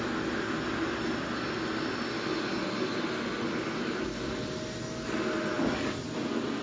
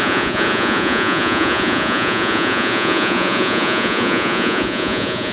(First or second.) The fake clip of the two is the second